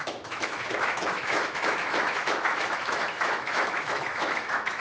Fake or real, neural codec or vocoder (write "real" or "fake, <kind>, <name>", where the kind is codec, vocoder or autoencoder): fake, autoencoder, DAC-VAE